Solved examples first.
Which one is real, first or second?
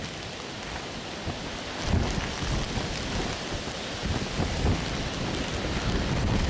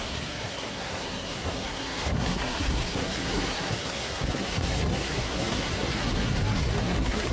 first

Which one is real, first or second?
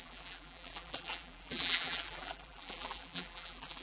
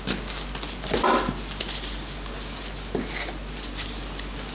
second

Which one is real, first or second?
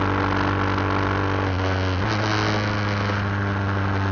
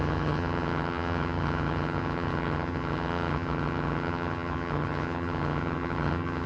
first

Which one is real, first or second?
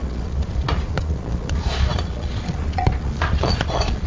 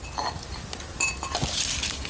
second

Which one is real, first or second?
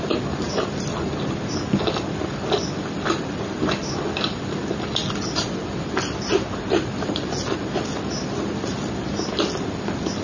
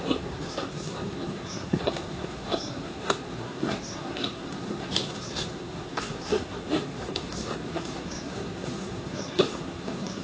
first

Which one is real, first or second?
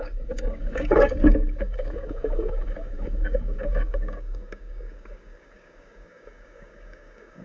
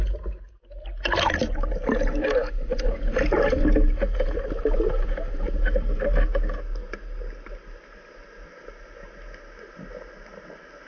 second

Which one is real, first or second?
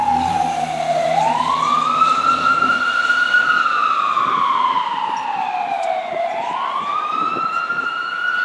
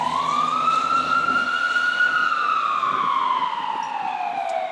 second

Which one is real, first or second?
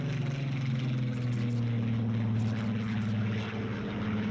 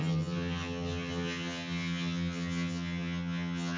first